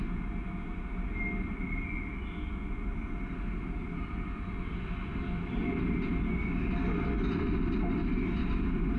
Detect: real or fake real